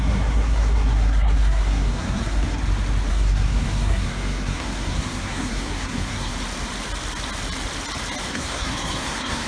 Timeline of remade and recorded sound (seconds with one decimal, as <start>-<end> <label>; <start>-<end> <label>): 0.0-2.6 remade; 2.6-3.1 recorded; 3.1-6.3 remade; 6.3-8.3 recorded; 8.3-9.5 remade